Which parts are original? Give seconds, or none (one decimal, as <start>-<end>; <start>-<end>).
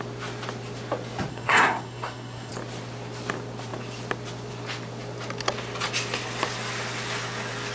0.0-1.3; 2.5-7.7